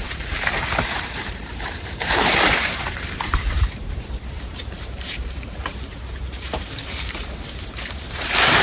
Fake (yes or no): yes